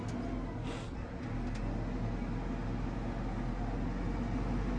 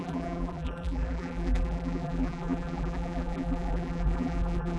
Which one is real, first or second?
first